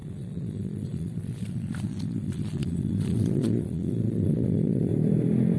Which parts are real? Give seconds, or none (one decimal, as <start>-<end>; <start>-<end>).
4.9-5.6